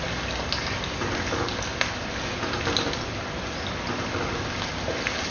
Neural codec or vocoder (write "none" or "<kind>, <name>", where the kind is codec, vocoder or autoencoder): none